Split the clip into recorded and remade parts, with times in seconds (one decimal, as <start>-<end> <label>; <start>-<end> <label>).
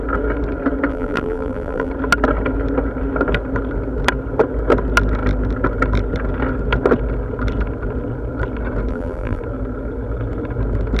0.0-0.9 recorded; 0.9-1.9 remade; 1.9-8.9 recorded; 8.9-9.4 remade; 9.4-11.0 recorded